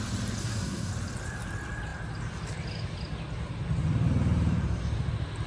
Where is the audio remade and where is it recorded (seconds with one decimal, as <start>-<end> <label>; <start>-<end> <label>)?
0.0-0.4 recorded; 0.4-0.9 remade; 0.9-5.5 recorded